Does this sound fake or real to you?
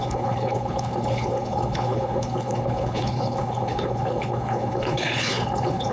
fake